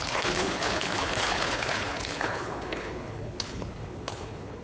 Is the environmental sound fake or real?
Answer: fake